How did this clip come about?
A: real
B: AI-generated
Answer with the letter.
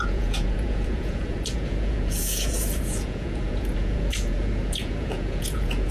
B